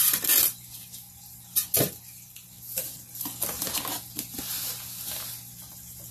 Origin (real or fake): real